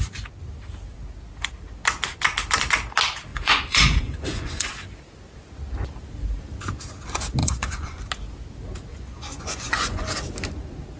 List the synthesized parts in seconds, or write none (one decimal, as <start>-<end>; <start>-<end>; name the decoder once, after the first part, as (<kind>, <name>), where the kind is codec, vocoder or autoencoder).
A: 3.3-4.7 (vocoder, Vocos); 7.4-8.0; 8.9-10.1